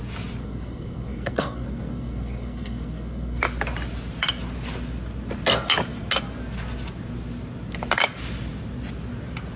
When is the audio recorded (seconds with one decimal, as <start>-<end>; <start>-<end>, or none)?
0.0-0.4; 3.4-9.6

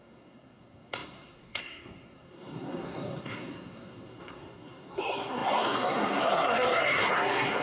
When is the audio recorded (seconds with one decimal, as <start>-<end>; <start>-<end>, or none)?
none